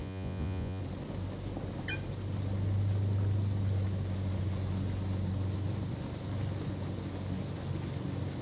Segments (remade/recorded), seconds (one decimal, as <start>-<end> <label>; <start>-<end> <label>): 0.0-0.8 remade; 0.8-8.4 recorded